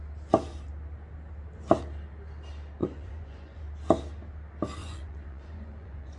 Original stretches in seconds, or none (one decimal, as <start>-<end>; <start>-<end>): 0.0-2.8; 3.6-4.8